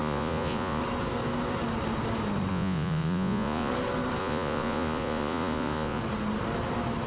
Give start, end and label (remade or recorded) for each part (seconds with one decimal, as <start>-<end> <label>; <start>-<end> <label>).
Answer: 0.0-0.8 remade; 0.8-2.5 recorded; 2.5-3.7 remade; 3.7-4.2 recorded; 4.2-6.0 remade; 6.0-7.1 recorded